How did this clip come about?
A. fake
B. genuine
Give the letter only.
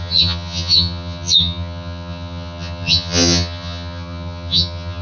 A